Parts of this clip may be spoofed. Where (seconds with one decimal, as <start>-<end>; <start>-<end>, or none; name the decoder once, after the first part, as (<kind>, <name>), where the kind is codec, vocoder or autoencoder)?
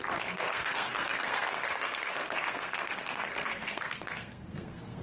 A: 0.0-5.0 (codec, SNAC)